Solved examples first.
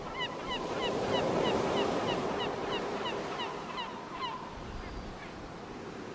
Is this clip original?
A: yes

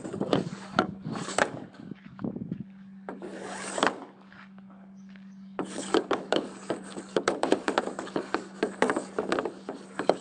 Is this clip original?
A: no